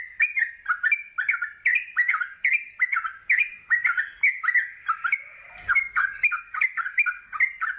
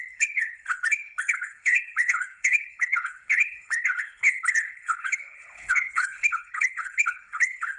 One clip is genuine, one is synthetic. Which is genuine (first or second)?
first